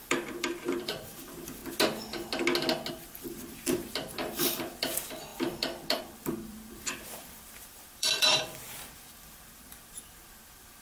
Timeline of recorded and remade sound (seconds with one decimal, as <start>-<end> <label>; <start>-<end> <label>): 0.0-1.6 remade; 1.6-2.9 recorded; 2.9-10.8 remade